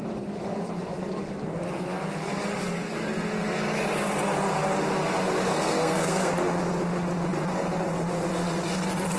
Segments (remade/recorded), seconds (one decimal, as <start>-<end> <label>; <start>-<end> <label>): 0.0-5.5 recorded; 5.5-6.3 remade; 6.3-9.2 recorded